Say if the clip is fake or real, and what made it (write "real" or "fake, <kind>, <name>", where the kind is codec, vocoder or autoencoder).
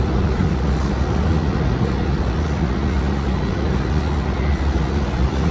fake, vocoder, Vocos